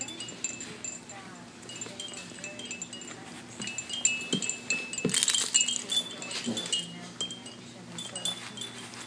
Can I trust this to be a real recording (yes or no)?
yes